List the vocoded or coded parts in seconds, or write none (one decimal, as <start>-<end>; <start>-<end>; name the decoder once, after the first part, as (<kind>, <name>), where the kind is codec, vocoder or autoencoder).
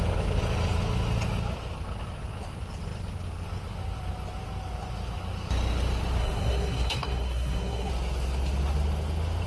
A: 6.2-7.9 (codec, SNAC)